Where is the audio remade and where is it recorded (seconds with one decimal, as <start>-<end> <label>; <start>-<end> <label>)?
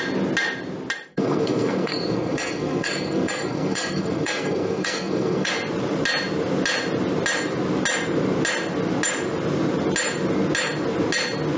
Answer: 0.0-1.1 recorded; 1.1-5.5 remade; 5.5-11.6 recorded